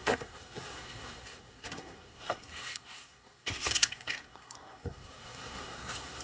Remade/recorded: remade